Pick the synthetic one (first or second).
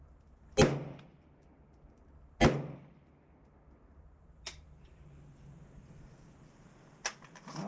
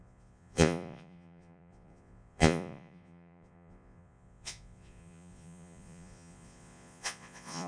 second